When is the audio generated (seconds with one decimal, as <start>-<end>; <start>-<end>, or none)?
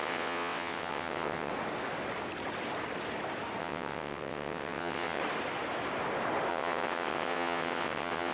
0.0-1.5; 3.6-5.2; 6.5-8.3